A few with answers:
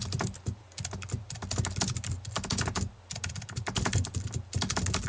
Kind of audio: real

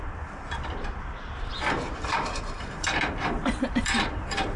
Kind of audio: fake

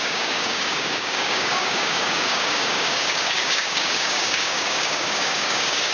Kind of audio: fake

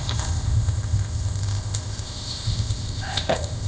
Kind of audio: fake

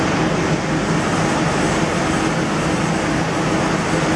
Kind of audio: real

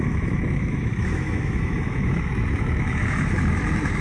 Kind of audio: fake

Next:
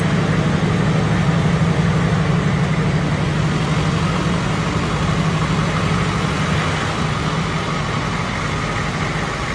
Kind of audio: real